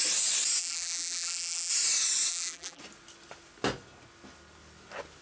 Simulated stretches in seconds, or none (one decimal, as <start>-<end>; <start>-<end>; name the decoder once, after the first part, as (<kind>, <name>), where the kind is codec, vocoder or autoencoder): 0.6-1.7 (vocoder, BigVGAN v2); 2.3-2.8